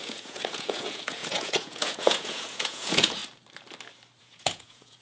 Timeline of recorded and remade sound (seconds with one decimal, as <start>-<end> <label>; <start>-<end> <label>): 0.0-3.2 remade; 3.2-4.2 recorded; 4.2-5.0 remade